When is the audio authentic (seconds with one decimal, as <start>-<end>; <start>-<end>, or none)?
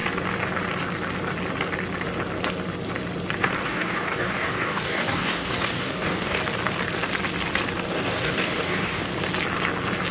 0.0-3.6; 6.4-7.9; 9.1-10.1